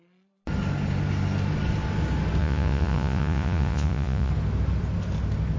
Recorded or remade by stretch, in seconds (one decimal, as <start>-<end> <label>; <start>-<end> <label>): 0.0-2.4 recorded; 2.4-4.3 remade; 4.3-5.6 recorded